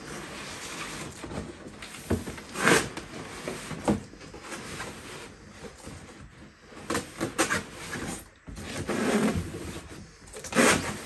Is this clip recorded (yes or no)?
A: yes